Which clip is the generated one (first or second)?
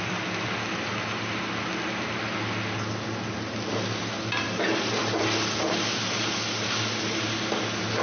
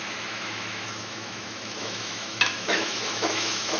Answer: second